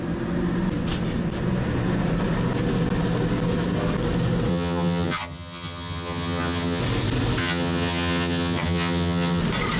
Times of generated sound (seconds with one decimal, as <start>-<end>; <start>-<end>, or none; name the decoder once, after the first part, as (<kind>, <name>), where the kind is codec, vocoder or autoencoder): 4.5-6.8 (vocoder, HiFi-GAN); 7.4-9.4